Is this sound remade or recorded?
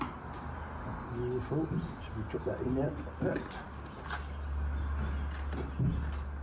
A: recorded